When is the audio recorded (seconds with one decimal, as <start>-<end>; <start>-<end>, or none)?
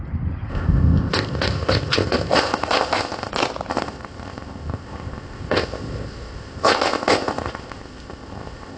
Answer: 0.0-0.5; 3.3-3.7